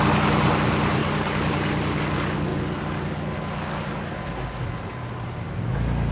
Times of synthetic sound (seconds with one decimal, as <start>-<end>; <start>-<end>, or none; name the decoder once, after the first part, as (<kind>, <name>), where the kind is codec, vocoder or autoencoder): 1.0-2.0 (codec, DAC)